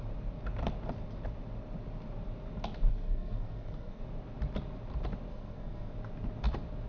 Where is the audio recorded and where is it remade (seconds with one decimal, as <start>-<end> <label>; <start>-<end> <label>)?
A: 0.0-2.9 recorded; 2.9-4.0 remade; 4.0-5.3 recorded; 5.3-5.9 remade; 5.9-6.9 recorded